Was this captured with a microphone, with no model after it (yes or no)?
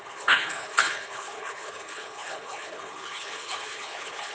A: no